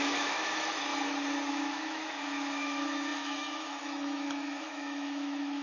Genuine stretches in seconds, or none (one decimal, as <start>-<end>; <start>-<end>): 0.9-1.5